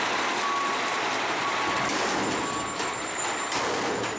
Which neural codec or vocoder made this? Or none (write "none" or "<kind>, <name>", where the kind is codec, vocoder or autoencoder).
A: vocoder, BigVGAN v2